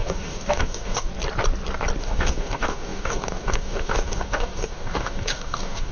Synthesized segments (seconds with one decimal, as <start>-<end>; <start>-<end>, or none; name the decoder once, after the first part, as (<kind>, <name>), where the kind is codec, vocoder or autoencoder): 0.0-1.1 (codec, DAC); 2.0-5.9